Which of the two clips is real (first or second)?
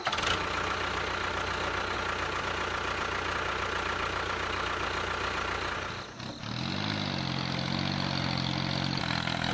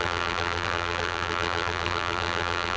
first